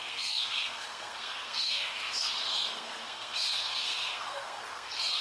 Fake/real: fake